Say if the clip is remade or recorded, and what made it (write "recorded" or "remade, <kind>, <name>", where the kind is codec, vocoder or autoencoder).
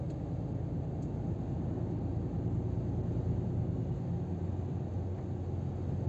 recorded